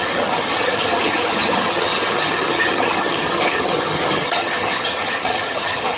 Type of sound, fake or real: fake